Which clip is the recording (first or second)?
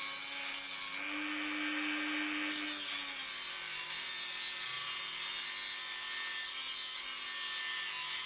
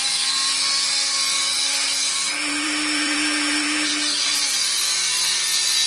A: first